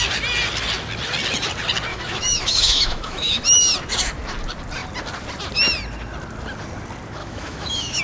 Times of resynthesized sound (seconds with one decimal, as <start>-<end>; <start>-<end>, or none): 1.9-3.4; 7.2-8.0